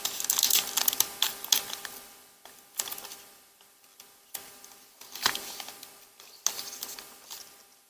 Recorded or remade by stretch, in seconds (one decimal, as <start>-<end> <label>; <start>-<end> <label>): 0.0-7.9 recorded